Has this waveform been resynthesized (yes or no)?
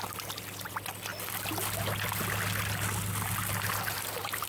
no